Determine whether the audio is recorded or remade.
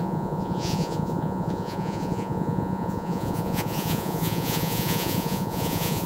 remade